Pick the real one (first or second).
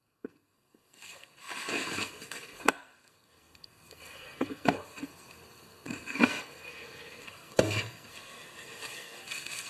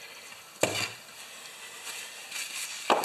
second